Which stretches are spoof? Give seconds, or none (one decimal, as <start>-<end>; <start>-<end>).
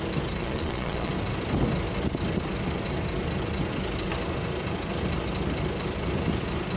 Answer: 0.4-1.1